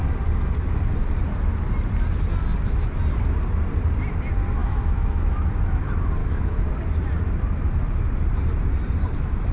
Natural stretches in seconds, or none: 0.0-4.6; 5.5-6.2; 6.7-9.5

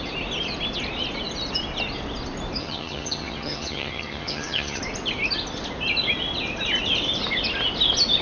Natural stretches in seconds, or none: 0.0-2.6; 4.8-8.2